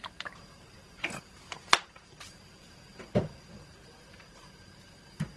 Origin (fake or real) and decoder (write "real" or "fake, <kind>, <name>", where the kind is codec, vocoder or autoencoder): fake, vocoder, BigVGAN v2